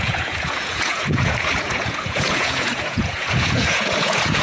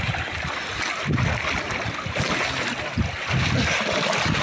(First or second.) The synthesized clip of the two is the first